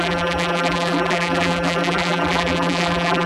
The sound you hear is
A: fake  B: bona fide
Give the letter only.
A